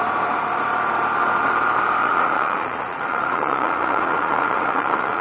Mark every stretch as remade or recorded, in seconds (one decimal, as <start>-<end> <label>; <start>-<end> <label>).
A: 0.0-2.0 recorded; 2.0-5.2 remade